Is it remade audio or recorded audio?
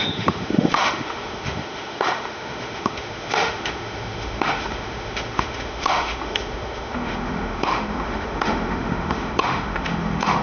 remade